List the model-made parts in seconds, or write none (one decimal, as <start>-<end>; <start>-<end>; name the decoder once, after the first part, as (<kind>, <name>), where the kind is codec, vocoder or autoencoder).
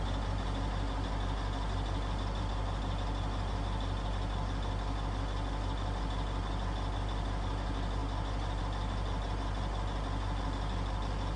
none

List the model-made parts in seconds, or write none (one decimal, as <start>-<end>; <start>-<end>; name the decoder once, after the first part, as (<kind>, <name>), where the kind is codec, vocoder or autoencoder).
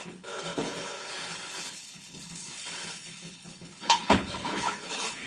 0.0-5.3 (codec, HILCodec)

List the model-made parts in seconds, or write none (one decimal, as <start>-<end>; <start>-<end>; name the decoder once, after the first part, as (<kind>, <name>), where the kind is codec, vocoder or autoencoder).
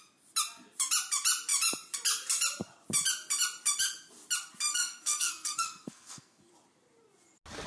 4.7-6.5 (codec, SNAC)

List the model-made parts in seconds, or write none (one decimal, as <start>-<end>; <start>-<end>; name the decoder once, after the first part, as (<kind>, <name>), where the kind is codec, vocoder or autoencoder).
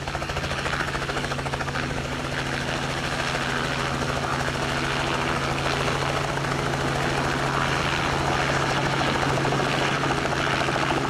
0.0-2.2 (codec, DAC)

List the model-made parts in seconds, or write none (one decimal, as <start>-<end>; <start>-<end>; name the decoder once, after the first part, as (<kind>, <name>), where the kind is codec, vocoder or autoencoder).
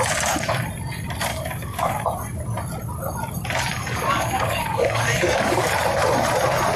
1.3-2.0 (codec, DAC); 3.8-5.7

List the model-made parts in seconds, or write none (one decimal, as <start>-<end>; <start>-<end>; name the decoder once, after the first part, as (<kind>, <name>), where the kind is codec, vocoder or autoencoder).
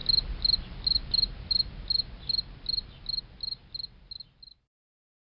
none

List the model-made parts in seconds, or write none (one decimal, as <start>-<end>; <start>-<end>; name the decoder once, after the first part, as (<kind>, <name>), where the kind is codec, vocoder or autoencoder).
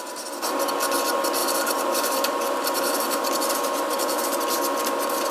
1.4-4.4 (vocoder, BigVGAN v2)